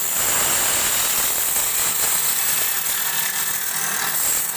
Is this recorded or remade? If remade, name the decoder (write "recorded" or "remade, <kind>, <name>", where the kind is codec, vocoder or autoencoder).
recorded